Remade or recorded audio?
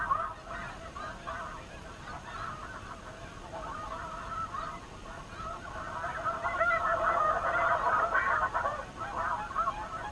recorded